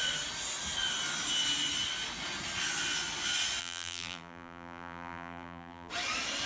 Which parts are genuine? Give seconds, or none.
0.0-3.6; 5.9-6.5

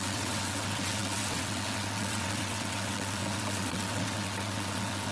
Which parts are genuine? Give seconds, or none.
none

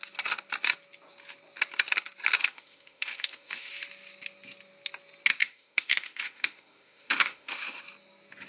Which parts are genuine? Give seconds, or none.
0.0-2.4; 3.7-5.4; 7.8-8.5

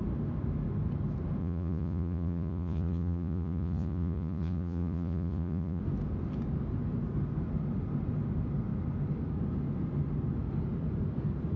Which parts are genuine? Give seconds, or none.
0.0-1.4; 5.8-11.6

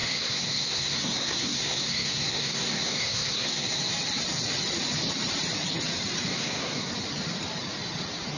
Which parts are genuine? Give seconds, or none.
3.8-6.3; 6.9-8.4

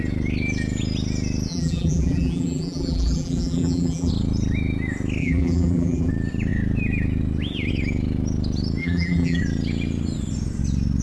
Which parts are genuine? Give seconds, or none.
0.0-1.5; 4.1-5.2; 6.1-8.8; 9.4-11.0

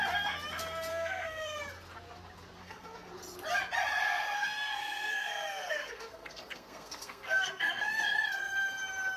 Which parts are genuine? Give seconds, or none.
0.0-0.9; 1.6-2.6; 3.1-4.0; 8.0-9.2